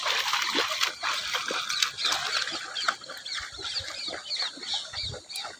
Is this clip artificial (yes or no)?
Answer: no